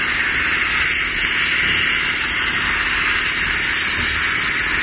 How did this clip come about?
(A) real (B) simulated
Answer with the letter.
A